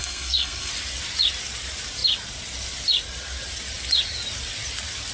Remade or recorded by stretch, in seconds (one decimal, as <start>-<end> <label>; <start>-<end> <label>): 0.0-0.7 remade; 0.7-5.1 recorded